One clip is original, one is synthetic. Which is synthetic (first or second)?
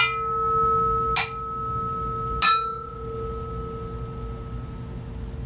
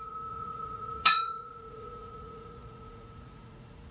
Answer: second